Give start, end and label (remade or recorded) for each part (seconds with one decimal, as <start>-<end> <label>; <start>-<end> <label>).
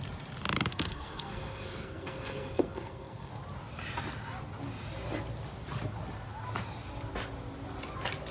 0.0-0.7 recorded; 0.7-3.3 remade; 3.3-8.3 recorded